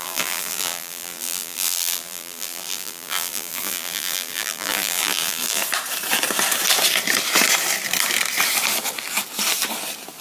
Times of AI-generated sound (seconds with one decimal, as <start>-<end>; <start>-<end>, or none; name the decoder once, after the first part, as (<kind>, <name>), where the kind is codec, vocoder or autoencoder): 0.0-5.6 (vocoder, BigVGAN v2)